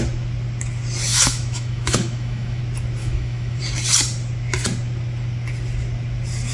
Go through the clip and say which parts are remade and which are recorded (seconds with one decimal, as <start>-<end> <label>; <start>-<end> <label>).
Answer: 0.0-1.1 recorded; 1.1-2.6 remade; 2.6-3.0 recorded; 3.0-3.6 remade; 3.6-6.5 recorded